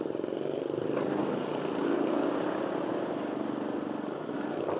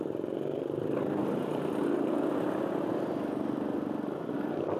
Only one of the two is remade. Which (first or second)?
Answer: second